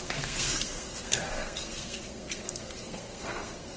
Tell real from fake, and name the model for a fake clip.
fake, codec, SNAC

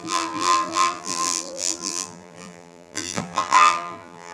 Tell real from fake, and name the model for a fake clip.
fake, vocoder, BigVGAN v2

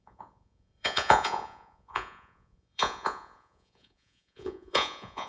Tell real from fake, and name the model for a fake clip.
fake, vocoder, Vocos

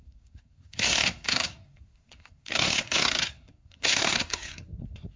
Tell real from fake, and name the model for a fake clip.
fake, codec, SNAC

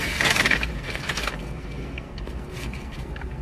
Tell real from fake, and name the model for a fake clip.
fake, codec, SNAC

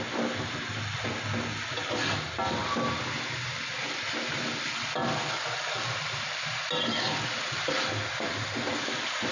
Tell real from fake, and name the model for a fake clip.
real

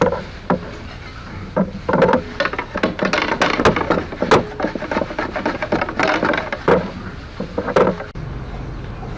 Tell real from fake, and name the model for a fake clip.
real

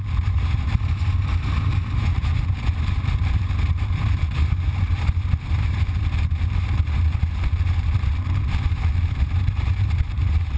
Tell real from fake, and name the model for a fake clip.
fake, vocoder, BigVGAN v2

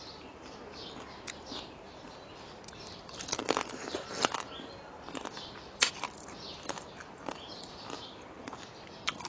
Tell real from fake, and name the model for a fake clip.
real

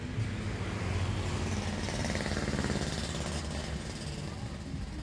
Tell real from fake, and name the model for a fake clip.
real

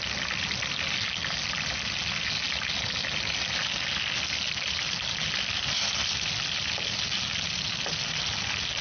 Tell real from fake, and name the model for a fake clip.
real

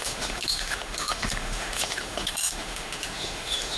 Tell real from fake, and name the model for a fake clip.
fake, autoencoder, DAC-VAE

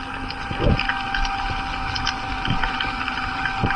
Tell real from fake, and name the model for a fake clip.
real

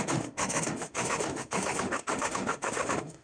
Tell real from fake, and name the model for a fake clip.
fake, autoencoder, DAC-VAE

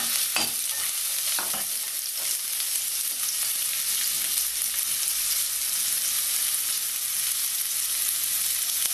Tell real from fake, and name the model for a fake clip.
real